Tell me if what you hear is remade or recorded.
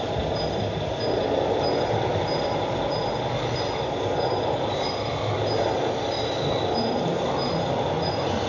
recorded